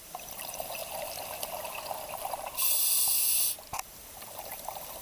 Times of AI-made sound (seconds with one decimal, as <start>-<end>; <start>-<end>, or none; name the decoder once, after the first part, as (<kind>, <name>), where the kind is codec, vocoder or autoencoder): 0.0-0.8 (vocoder, BigVGAN v2); 3.8-5.0